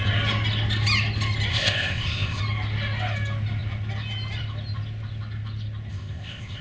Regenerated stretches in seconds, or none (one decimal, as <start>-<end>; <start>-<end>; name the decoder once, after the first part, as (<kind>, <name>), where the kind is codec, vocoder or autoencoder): 1.5-2.4 (codec, ZipCodec); 5.9-6.6